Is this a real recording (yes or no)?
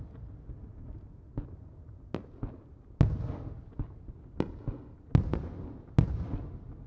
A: yes